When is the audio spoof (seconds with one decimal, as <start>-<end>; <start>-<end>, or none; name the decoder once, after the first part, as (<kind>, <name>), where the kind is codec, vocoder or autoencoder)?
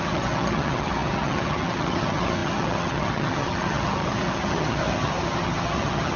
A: 0.0-6.2 (vocoder, HiFi-GAN)